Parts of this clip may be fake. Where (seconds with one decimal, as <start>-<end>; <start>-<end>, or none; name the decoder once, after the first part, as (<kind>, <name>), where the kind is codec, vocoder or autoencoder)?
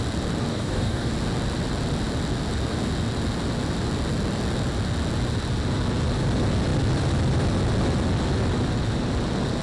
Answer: 0.5-1.1 (codec, DAC)